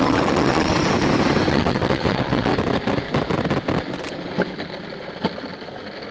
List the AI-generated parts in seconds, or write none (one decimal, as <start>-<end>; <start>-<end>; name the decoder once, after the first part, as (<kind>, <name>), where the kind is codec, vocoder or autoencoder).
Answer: 0.0-0.7 (vocoder, WaveNeXt); 1.5-2.5